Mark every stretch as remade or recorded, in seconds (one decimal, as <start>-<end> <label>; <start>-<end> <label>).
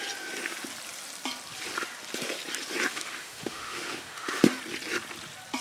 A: 0.0-2.9 recorded; 2.9-4.5 remade; 4.5-5.6 recorded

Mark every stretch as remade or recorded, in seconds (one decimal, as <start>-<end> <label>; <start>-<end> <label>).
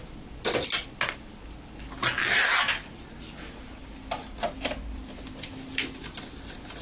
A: 0.0-3.8 recorded; 3.8-6.0 remade; 6.0-6.8 recorded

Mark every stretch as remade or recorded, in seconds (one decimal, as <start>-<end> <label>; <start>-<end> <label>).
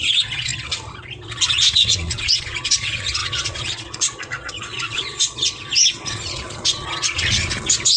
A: 0.0-0.5 remade; 0.5-1.5 recorded; 1.5-8.0 remade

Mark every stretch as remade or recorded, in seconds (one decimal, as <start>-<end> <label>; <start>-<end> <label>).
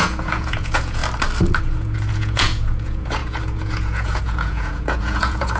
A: 0.0-1.0 remade; 1.0-1.6 recorded; 1.6-5.6 remade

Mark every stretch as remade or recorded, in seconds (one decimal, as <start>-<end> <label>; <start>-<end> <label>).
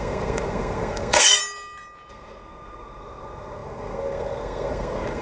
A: 0.0-1.4 remade; 1.4-2.1 recorded; 2.1-5.2 remade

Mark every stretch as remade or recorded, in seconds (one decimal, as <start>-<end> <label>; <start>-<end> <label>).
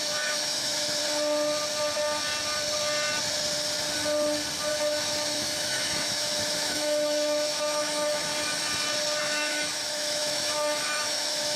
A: 0.0-1.0 remade; 1.0-4.7 recorded; 4.7-8.3 remade; 8.3-9.2 recorded; 9.2-11.6 remade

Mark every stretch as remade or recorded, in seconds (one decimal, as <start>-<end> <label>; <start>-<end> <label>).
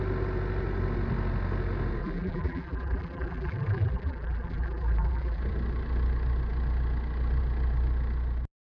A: 0.0-2.0 recorded; 2.0-5.4 remade; 5.4-8.6 recorded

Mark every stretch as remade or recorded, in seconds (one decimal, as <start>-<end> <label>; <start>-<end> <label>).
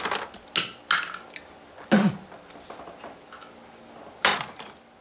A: 0.0-5.0 recorded